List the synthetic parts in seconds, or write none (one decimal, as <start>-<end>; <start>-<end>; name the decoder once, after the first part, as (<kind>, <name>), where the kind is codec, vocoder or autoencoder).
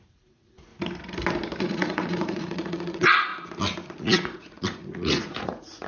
0.0-0.7 (vocoder, Vocos); 1.6-3.3; 4.0-5.9